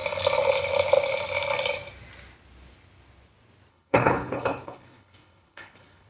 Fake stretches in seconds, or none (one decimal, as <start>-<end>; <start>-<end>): 3.7-6.1